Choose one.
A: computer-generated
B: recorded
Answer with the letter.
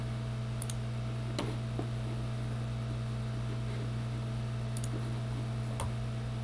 B